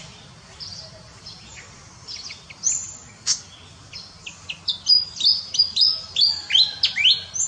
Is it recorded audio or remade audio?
recorded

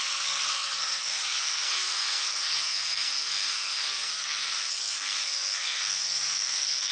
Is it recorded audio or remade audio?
remade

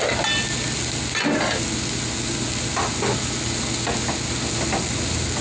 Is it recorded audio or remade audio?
recorded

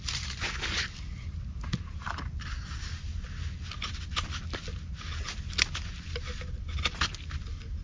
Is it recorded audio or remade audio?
recorded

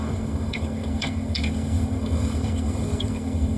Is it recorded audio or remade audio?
remade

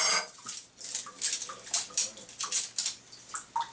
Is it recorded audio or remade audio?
recorded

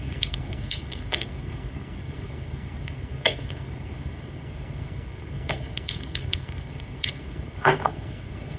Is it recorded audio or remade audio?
remade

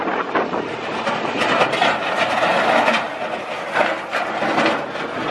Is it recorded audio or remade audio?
recorded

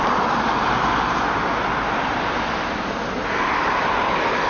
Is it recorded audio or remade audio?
recorded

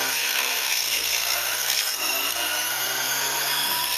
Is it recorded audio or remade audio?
remade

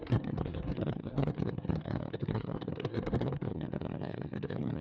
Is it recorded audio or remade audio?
remade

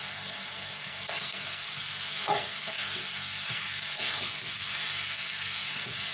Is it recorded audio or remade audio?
remade